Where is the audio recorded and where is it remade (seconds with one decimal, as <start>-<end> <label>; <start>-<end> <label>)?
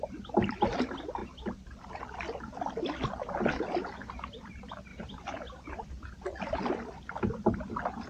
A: 0.0-4.9 recorded; 4.9-5.7 remade; 5.7-8.1 recorded